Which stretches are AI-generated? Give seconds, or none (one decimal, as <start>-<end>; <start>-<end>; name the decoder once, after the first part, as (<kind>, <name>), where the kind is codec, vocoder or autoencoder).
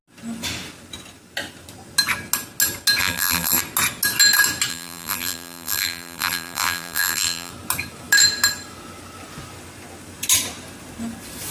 3.0-3.6 (vocoder, BigVGAN v2); 4.7-7.5